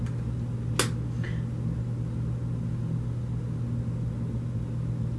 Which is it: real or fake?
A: real